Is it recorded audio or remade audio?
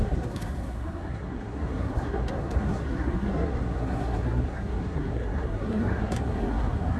remade